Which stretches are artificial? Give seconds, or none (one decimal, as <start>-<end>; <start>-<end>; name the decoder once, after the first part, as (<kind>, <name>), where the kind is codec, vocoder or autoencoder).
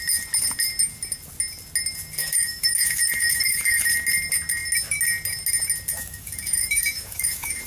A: 2.2-3.9 (autoencoder, DAC-VAE); 5.9-7.7